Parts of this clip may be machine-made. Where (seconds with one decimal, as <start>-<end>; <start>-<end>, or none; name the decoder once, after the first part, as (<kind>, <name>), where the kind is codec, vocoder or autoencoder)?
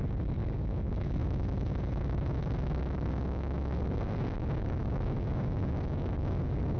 0.0-6.8 (codec, DAC)